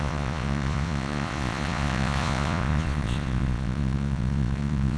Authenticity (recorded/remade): remade